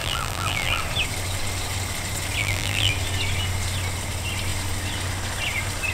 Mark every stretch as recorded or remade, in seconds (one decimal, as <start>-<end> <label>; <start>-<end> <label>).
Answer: 0.0-0.8 remade; 0.8-2.4 recorded; 2.4-2.9 remade; 2.9-5.9 recorded